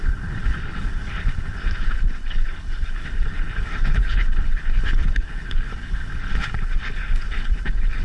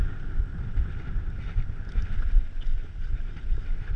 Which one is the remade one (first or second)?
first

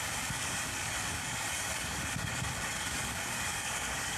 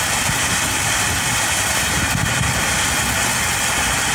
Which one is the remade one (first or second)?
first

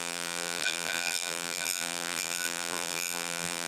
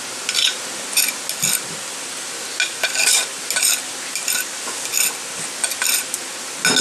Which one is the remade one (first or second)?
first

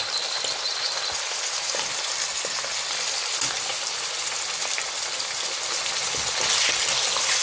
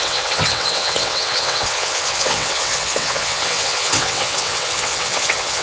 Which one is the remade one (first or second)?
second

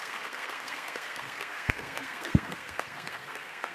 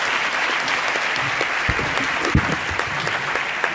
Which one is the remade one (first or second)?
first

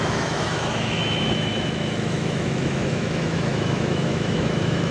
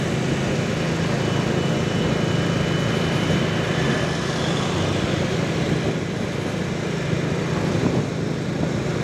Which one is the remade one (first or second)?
first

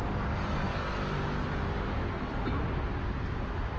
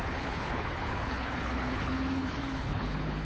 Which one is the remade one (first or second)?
second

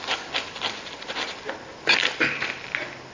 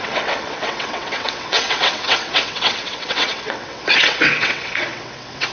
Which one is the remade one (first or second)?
second